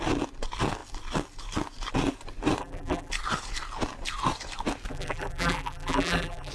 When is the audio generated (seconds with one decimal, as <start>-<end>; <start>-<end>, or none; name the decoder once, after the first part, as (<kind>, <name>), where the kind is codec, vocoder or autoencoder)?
2.6-3.1 (vocoder, BigVGAN v2); 4.9-6.5